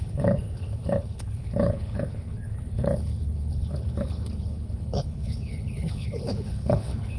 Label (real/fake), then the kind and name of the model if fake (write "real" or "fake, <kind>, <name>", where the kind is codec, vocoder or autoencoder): fake, codec, HILCodec